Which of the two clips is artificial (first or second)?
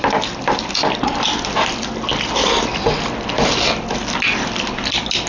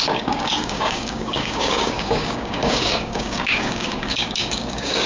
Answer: second